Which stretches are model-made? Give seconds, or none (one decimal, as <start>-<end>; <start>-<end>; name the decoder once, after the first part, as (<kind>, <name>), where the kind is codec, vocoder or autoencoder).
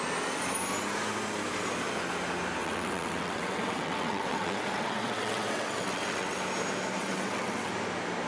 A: 2.6-6.4 (vocoder, WaveNeXt); 7.0-7.7